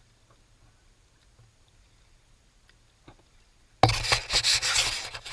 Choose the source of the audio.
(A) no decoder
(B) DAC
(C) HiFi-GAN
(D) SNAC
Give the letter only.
A